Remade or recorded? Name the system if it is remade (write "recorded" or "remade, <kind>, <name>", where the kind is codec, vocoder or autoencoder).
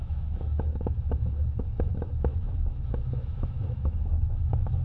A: remade, autoencoder, DAC-VAE